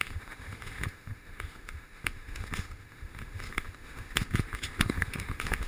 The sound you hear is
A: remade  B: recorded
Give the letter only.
A